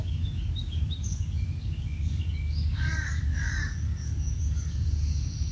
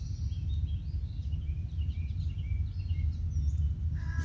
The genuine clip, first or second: second